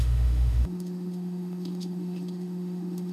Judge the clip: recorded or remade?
remade